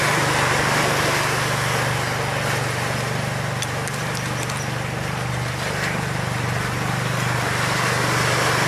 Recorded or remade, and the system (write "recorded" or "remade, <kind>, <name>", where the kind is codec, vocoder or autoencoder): recorded